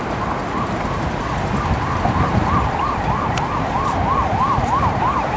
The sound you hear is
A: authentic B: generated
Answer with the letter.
A